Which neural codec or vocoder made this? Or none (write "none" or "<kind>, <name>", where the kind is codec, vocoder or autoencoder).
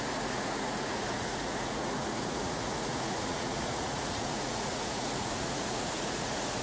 vocoder, Vocos